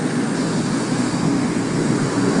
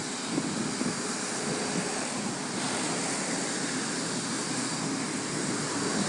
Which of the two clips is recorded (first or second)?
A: second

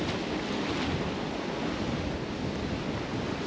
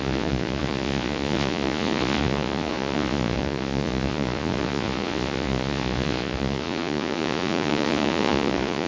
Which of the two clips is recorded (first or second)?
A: first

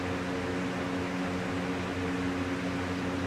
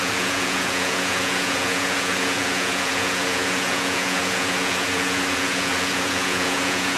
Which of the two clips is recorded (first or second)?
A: first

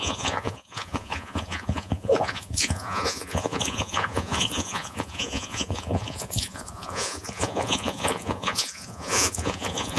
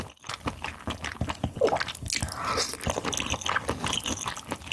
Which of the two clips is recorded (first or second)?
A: second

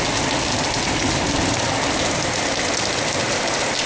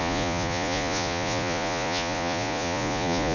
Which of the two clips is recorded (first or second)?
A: first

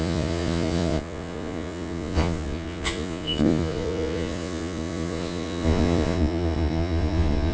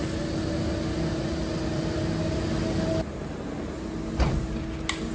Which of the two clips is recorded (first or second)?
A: second